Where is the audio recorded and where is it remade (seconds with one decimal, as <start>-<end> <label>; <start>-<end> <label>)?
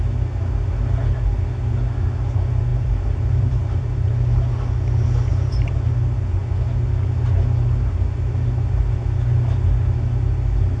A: 0.0-2.7 recorded; 2.7-4.1 remade; 4.1-5.3 recorded; 5.3-5.9 remade; 5.9-10.8 recorded